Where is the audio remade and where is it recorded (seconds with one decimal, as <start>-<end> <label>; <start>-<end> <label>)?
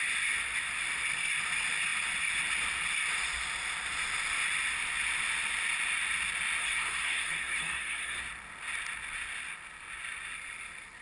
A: 0.0-6.6 recorded; 6.6-8.2 remade; 8.2-11.0 recorded